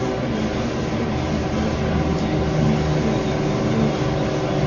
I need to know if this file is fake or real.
real